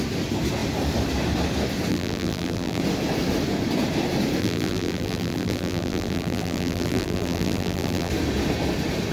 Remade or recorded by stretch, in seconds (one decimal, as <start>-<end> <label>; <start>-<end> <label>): 0.0-1.9 recorded; 1.9-2.8 remade; 2.8-4.4 recorded; 4.4-8.1 remade; 8.1-9.1 recorded